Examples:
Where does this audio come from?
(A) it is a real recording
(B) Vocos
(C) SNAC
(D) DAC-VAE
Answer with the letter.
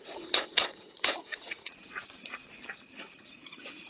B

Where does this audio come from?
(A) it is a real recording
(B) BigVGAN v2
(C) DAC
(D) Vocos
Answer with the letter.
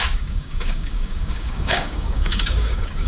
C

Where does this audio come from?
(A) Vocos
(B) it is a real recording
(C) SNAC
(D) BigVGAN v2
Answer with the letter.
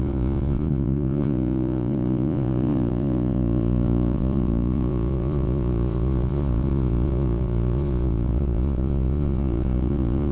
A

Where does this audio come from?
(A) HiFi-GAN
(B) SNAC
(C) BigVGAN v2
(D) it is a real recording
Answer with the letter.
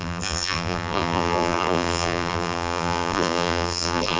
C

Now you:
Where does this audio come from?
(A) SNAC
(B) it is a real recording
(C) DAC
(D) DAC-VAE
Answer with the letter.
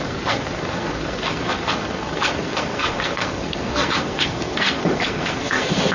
A